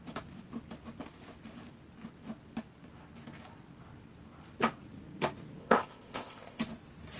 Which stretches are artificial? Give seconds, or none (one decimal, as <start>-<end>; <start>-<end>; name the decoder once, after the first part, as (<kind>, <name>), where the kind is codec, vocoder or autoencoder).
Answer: 5.6-6.6 (codec, ZipCodec)